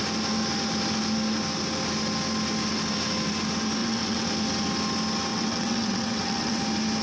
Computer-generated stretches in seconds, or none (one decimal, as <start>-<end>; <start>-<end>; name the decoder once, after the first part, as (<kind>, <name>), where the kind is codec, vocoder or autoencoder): 3.8-4.3 (vocoder, WaveNeXt); 5.3-6.6